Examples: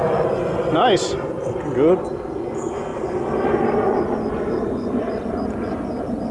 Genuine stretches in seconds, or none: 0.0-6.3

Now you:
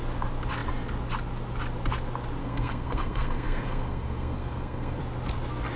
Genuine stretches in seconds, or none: 0.0-2.4; 5.0-5.8

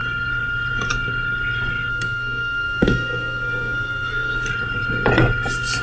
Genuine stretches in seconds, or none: 0.0-1.9; 4.5-5.8

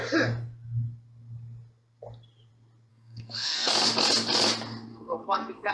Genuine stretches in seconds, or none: 0.0-2.9; 3.7-4.9

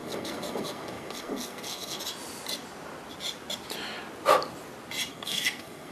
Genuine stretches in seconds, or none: 2.0-5.1

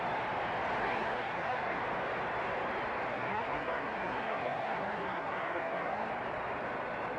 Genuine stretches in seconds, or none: 0.0-0.8; 1.8-3.1; 6.1-7.2